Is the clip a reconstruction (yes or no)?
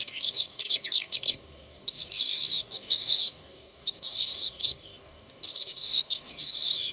yes